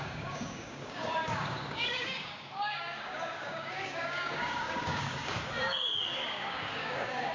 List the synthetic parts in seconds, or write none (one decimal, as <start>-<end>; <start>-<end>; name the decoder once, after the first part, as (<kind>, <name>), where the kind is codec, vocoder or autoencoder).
0.0-7.3 (codec, DAC)